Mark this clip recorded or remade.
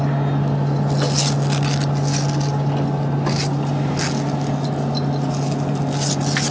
recorded